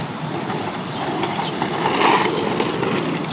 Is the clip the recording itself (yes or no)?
yes